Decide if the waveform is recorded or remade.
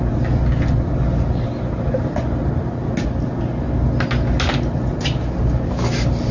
recorded